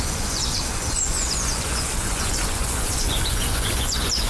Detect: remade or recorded remade